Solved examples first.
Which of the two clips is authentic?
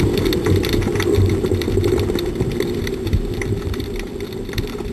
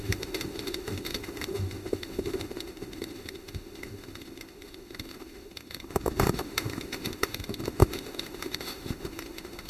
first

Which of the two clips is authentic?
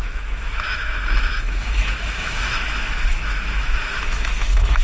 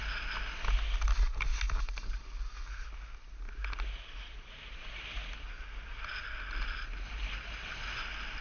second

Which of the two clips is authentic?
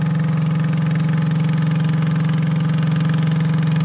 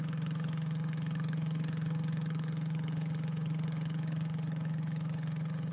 first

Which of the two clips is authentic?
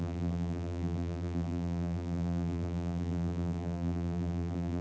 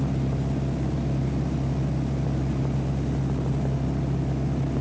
second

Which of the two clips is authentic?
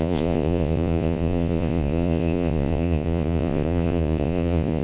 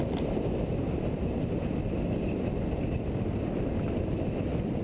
second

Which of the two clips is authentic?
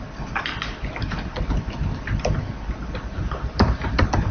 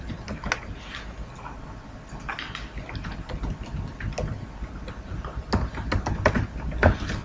second